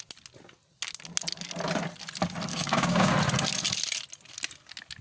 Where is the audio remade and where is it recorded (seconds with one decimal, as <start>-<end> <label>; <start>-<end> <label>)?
0.0-2.5 recorded; 2.5-3.1 remade; 3.1-5.0 recorded